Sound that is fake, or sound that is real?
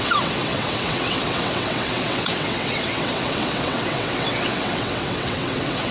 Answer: fake